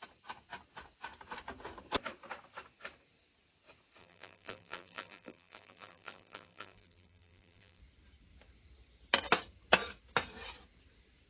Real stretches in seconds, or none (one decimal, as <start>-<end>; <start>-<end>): 0.0-4.0; 7.8-11.3